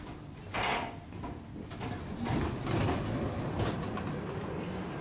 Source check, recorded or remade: recorded